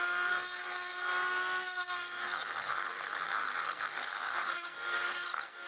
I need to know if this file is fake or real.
fake